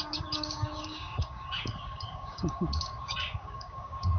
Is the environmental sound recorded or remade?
remade